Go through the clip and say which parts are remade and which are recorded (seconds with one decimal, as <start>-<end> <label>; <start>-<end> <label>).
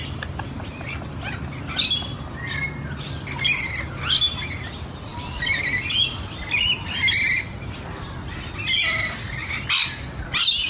0.0-10.7 recorded